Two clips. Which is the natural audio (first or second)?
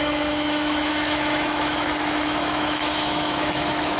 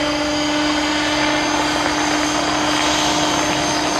second